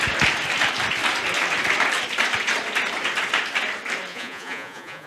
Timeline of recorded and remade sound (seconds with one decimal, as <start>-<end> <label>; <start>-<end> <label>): 0.0-4.1 recorded; 4.1-5.1 remade